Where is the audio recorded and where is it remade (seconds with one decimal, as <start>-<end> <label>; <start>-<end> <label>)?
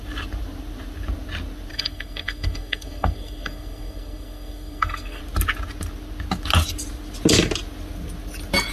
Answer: 0.0-1.7 recorded; 1.7-5.2 remade; 5.2-8.7 recorded